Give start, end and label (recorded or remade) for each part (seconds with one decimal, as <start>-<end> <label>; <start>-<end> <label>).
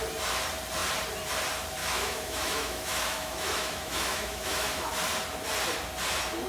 0.0-1.8 recorded; 1.8-4.9 remade; 4.9-6.5 recorded